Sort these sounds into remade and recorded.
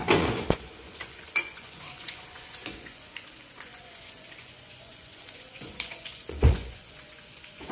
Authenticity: remade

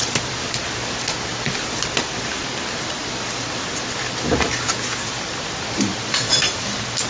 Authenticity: remade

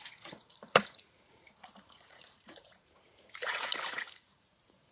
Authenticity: remade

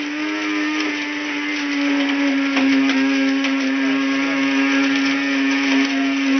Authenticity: recorded